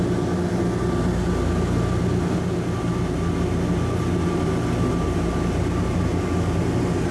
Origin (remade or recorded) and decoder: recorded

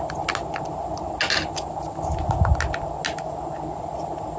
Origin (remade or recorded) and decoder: recorded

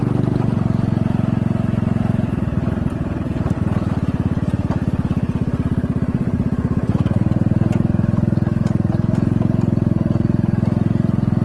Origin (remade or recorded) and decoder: recorded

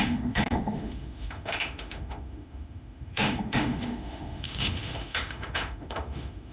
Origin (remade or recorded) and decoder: remade, autoencoder, DAC-VAE